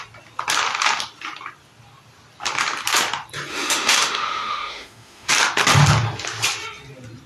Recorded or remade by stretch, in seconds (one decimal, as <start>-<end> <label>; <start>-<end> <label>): 0.0-3.5 recorded; 3.5-5.3 remade; 5.3-7.3 recorded